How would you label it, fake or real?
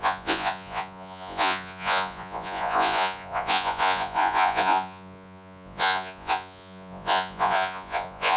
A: fake